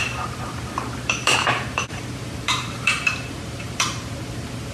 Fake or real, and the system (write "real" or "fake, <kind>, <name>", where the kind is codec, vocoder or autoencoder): fake, vocoder, BigVGAN v2